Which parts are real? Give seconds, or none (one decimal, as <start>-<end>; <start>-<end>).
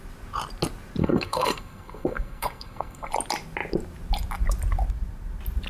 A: 0.0-1.0; 3.1-5.7